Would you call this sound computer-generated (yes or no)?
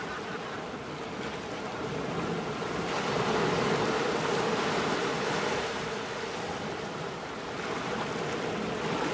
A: no